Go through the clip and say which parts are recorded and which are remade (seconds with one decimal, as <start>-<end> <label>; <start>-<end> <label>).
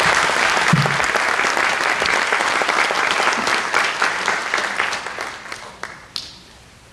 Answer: 0.0-6.9 recorded